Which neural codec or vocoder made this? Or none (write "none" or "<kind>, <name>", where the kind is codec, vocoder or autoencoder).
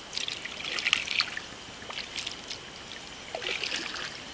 none